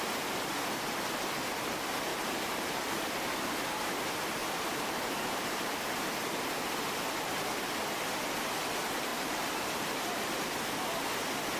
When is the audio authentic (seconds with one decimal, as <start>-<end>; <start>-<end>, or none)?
0.0-2.1; 3.4-4.4; 5.8-9.1; 10.3-11.6